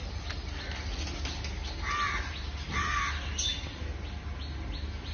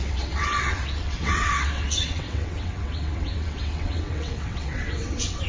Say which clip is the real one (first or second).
first